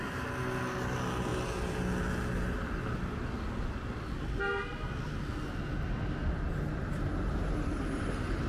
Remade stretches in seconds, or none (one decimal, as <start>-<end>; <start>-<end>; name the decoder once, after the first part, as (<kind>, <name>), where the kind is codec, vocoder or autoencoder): none